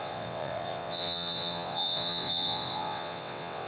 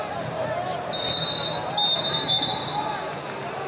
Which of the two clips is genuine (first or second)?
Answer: second